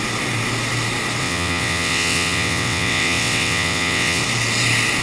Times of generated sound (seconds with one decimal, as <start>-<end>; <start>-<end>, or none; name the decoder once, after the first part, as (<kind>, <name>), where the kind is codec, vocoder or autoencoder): 1.2-4.2 (vocoder, WaveNeXt)